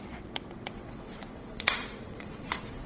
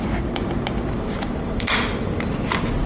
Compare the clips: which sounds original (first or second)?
second